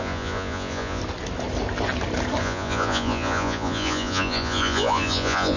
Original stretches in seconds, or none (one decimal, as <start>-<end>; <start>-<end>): 1.0-2.4